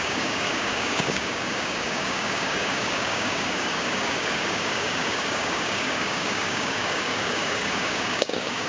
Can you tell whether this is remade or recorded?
remade